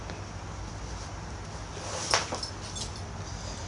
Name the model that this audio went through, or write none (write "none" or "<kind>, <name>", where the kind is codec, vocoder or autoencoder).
none